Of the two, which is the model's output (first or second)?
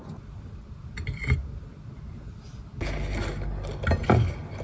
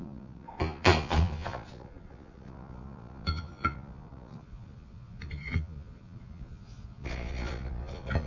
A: second